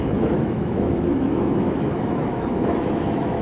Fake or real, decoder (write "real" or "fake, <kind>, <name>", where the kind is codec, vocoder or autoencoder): fake, autoencoder, DAC-VAE